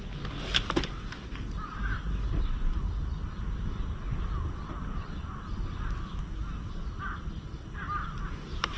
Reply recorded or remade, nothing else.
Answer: recorded